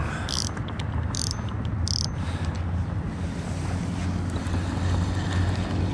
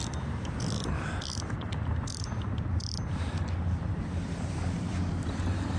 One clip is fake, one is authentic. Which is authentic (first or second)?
first